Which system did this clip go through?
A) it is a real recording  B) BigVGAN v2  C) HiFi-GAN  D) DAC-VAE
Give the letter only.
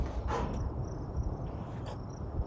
B